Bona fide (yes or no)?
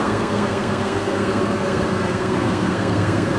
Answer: no